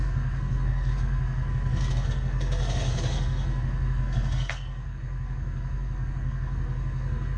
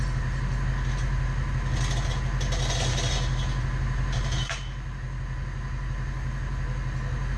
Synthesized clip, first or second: first